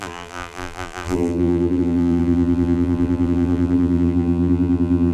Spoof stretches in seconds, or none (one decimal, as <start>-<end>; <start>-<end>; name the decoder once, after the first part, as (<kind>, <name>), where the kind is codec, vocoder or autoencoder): 0.0-5.1 (vocoder, BigVGAN v2)